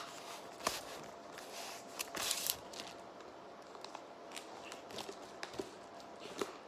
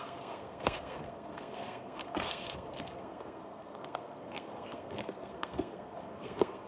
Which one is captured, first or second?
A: first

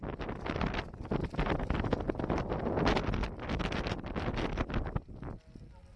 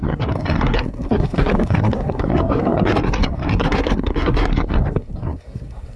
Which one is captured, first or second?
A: first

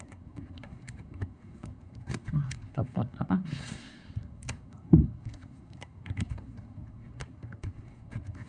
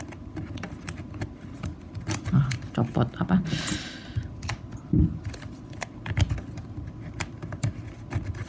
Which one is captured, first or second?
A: second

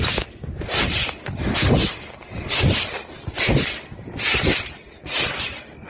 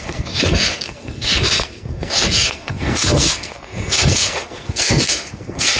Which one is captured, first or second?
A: first